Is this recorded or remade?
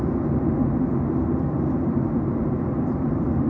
recorded